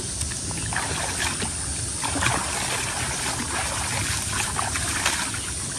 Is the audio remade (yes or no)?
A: no